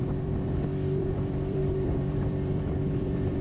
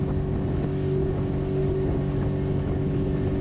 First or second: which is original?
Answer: second